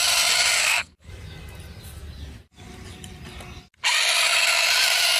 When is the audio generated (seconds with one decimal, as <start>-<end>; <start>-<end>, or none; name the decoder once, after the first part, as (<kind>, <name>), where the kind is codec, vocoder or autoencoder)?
0.6-1.1 (codec, SNAC)